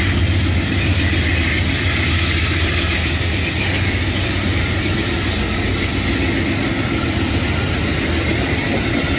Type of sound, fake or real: real